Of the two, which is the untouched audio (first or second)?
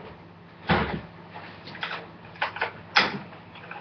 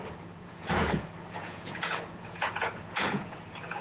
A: first